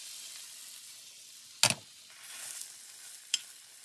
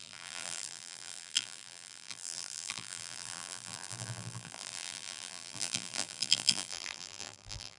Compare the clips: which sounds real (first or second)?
first